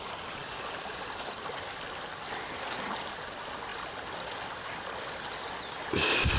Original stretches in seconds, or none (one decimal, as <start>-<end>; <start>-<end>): 0.0-6.4